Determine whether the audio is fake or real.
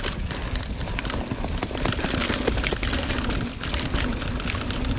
real